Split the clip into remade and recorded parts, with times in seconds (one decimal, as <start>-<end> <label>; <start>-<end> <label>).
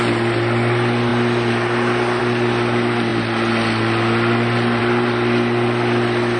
0.0-6.4 recorded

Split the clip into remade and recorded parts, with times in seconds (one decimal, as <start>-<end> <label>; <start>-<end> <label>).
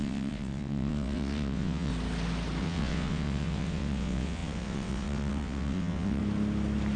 0.0-1.9 remade; 1.9-2.6 recorded; 2.6-6.2 remade; 6.2-7.0 recorded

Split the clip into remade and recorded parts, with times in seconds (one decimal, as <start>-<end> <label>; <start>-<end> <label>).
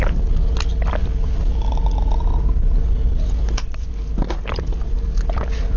0.0-5.8 recorded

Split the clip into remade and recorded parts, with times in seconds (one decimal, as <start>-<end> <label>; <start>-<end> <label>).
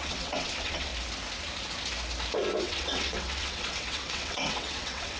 0.0-0.9 remade; 0.9-2.6 recorded; 2.6-5.2 remade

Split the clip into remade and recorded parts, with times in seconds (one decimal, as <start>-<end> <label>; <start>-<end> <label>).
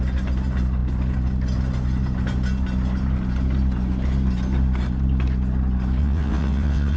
0.0-6.0 recorded; 6.0-7.0 remade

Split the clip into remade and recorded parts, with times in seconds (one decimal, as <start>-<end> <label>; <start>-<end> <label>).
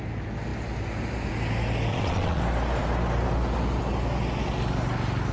0.0-1.9 recorded; 1.9-2.4 remade; 2.4-5.3 recorded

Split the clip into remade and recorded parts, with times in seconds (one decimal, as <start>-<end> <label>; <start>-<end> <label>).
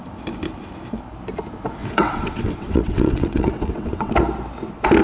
0.0-1.8 recorded; 1.8-4.1 remade; 4.1-5.0 recorded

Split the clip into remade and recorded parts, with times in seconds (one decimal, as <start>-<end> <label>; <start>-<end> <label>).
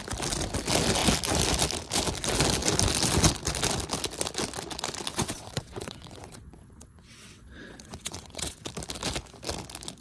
0.0-5.1 recorded; 5.1-8.7 remade; 8.7-10.0 recorded